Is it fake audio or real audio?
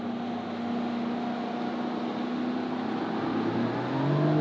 real